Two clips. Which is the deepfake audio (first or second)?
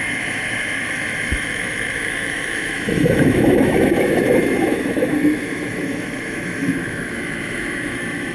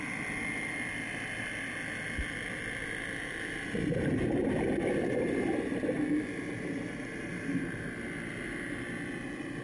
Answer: first